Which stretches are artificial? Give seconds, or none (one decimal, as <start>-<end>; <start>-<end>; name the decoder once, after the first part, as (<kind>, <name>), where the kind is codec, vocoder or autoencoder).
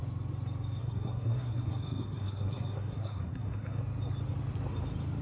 0.8-3.8 (codec, SNAC)